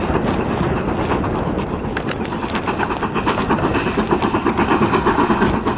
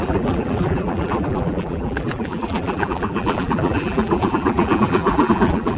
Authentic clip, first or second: first